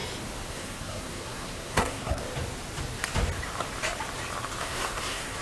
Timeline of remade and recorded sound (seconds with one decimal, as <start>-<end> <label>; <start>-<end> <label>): 0.0-0.5 recorded; 0.5-2.2 remade; 2.2-4.6 recorded; 4.6-5.4 remade